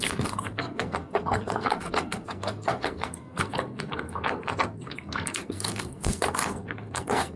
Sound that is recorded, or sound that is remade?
remade